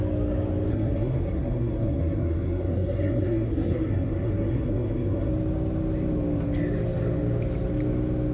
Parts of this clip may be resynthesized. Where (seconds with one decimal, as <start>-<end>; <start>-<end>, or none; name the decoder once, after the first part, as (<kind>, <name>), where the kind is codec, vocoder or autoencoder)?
0.7-5.3 (codec, SNAC)